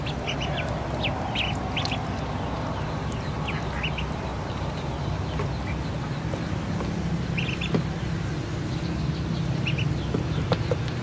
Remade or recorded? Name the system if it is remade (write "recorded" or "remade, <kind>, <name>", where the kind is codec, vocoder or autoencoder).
recorded